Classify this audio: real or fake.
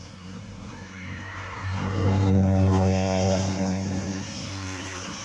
fake